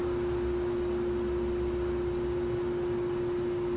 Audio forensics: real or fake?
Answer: real